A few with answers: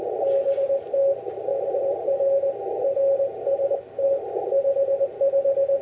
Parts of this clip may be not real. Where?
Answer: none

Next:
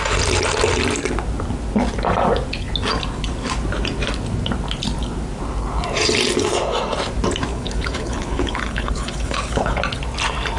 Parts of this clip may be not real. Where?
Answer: 7.5-9.8 (codec, HILCodec)